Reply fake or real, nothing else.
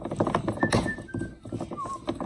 real